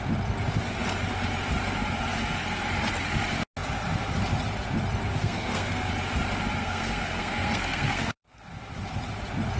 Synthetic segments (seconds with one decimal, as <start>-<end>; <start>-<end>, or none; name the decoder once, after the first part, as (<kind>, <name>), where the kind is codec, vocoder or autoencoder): 5.1-5.9 (codec, SNAC); 6.6-8.4